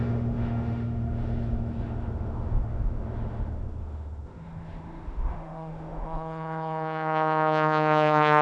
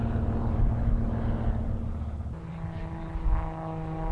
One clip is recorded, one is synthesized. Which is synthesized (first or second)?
first